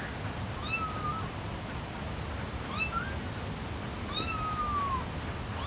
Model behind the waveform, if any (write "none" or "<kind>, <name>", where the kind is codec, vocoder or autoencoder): none